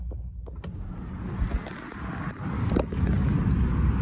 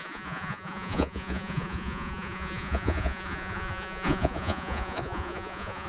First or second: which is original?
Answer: first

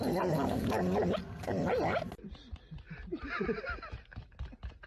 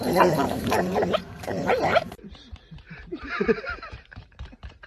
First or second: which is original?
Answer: first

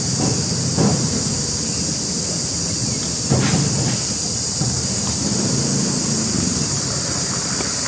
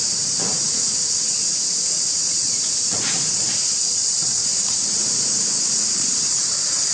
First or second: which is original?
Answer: first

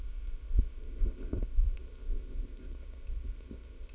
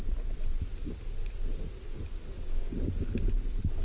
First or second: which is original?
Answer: second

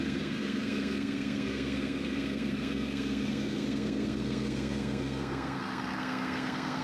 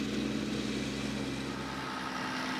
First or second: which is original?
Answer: second